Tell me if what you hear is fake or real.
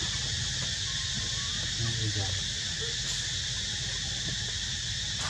real